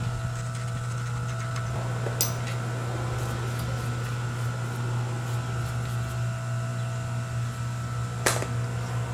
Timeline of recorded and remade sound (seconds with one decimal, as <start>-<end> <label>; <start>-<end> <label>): 0.0-9.1 recorded